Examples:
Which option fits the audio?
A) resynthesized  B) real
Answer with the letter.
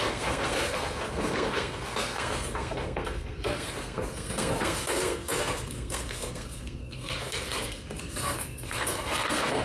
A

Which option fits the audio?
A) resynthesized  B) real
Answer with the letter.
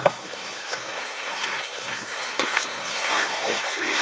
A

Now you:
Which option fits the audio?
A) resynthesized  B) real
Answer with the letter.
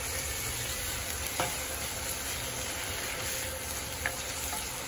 B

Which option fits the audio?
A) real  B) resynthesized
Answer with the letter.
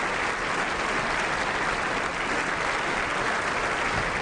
A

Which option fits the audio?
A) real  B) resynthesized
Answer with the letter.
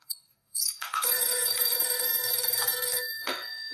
B